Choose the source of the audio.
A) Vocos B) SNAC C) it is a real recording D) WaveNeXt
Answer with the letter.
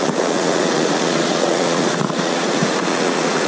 A